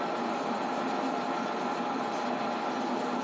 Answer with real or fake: fake